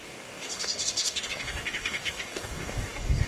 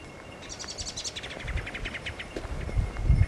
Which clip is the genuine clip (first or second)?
second